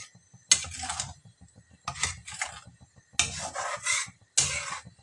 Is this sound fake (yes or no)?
no